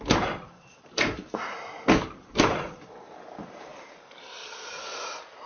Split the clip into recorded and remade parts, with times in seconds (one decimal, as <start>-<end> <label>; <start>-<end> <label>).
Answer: 0.0-3.7 remade; 3.7-5.5 recorded